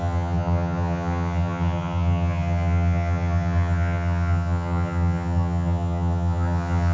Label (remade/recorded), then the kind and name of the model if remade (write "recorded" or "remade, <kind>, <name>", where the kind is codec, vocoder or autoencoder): remade, vocoder, HiFi-GAN